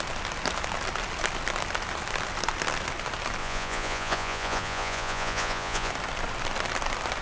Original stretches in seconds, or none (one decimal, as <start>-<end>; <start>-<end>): 0.0-3.4; 5.9-7.2